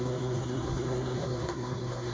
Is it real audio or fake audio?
fake